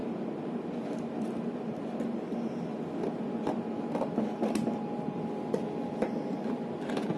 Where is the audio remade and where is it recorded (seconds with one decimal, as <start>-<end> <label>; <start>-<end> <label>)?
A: 0.0-7.2 recorded